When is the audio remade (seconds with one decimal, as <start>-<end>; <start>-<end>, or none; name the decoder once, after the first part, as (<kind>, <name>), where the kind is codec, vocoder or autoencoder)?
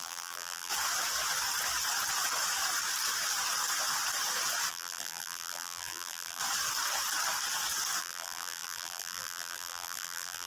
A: 0.0-0.7 (vocoder, BigVGAN v2); 4.7-6.4; 8.0-10.5